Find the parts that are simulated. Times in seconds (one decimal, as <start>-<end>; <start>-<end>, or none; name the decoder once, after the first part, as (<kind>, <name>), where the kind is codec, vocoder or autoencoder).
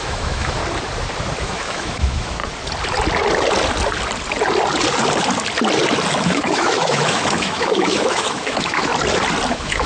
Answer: 0.0-0.6 (autoencoder, DAC-VAE); 1.4-2.4; 6.2-8.9; 9.5-9.9